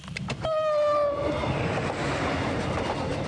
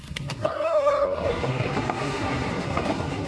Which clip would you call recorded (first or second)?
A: first